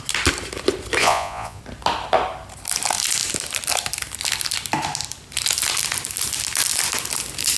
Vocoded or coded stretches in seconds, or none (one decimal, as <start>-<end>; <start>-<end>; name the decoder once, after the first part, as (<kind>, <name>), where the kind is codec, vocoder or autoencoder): 1.0-1.6 (vocoder, Vocos)